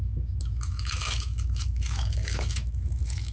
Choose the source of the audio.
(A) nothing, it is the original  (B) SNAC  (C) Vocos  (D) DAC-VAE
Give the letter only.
D